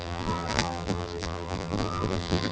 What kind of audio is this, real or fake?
fake